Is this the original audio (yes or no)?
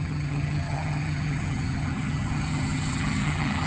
no